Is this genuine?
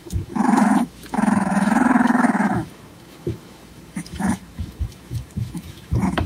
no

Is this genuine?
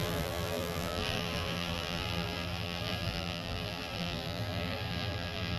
no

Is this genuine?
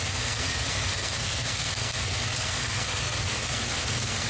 no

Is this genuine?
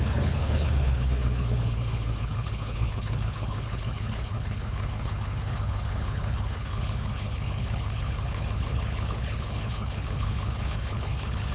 no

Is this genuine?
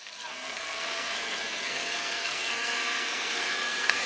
no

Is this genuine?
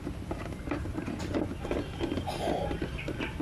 yes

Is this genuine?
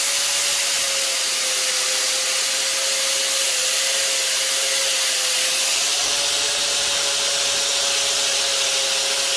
yes